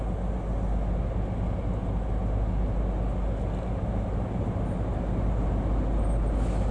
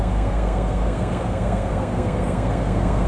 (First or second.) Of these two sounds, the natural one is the first